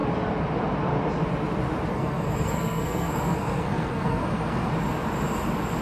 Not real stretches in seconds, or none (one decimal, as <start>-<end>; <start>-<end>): 1.9-4.7